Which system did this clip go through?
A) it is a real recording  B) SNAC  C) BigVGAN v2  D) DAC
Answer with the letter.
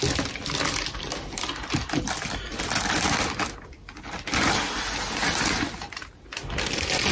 A